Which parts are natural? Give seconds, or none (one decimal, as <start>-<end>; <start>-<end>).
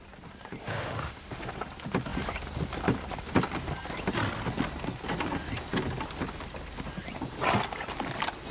0.0-0.6; 1.5-8.5